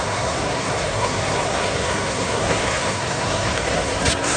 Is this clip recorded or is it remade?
remade